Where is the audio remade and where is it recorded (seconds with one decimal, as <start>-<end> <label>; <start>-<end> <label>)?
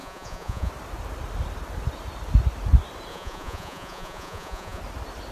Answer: 0.0-0.7 remade; 0.7-3.1 recorded; 3.1-4.8 remade; 4.8-5.3 recorded